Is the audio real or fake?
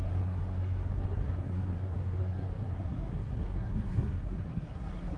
fake